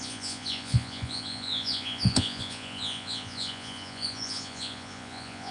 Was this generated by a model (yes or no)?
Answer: yes